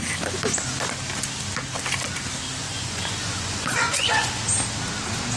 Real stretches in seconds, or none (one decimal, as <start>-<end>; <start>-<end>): 0.0-2.6; 4.4-5.4